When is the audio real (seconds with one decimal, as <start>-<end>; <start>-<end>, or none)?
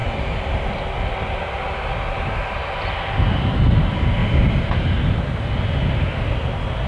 0.0-6.9